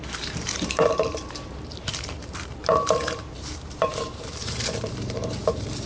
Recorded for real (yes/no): no